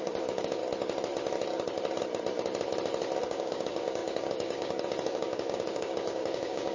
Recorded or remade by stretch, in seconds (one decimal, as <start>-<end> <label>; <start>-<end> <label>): 0.0-0.6 remade; 0.6-3.2 recorded; 3.2-6.7 remade